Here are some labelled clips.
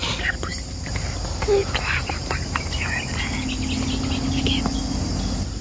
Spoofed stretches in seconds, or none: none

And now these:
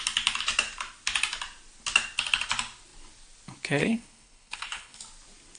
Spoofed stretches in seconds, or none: 3.8-5.0 (codec, HILCodec)

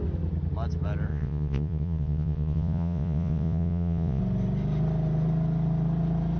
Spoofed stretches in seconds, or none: 1.1-4.2 (vocoder, Vocos)

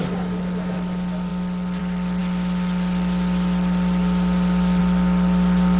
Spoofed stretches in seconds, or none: none